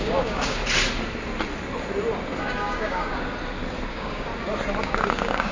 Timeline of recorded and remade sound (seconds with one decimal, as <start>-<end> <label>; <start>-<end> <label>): 0.0-0.6 remade; 0.6-2.4 recorded; 2.4-3.1 remade; 3.1-3.9 recorded; 3.9-4.3 remade; 4.3-4.8 recorded; 4.8-5.5 remade